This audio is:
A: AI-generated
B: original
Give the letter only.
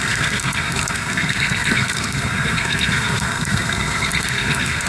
A